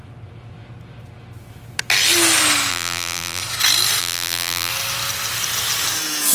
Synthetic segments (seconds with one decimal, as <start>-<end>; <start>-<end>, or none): 2.7-3.4; 4.0-4.7